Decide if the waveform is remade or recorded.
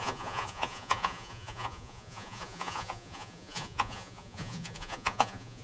remade